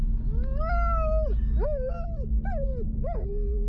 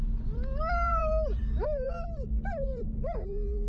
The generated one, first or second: second